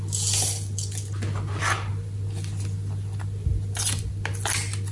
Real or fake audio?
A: real